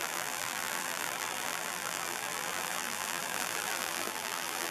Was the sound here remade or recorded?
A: remade